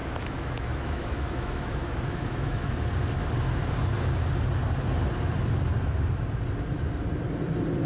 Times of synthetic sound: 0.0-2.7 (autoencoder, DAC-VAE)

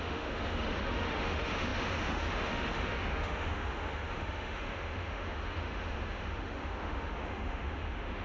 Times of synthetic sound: 0.0-8.2 (autoencoder, DAC-VAE)

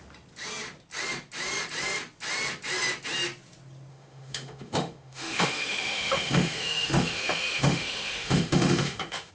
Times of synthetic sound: 3.9-9.3 (autoencoder, DAC-VAE)

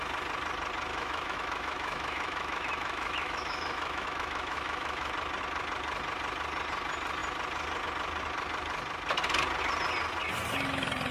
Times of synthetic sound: 0.9-5.1 (autoencoder, DAC-VAE)

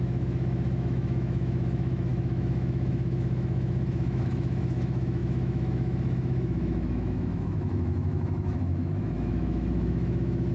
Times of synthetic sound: 0.0-10.5 (autoencoder, DAC-VAE)

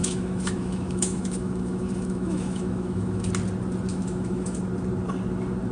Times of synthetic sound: 0.0-3.3 (autoencoder, DAC-VAE); 3.9-4.6